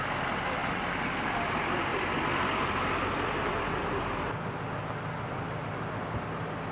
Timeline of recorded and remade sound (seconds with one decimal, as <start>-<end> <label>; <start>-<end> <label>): 0.0-0.6 recorded; 0.6-1.5 remade; 1.5-6.7 recorded